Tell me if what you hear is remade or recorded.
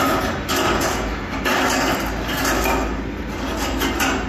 recorded